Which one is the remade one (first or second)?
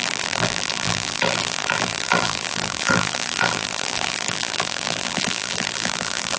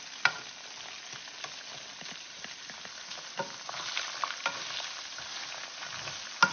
first